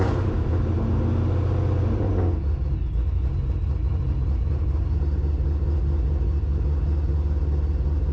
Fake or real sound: real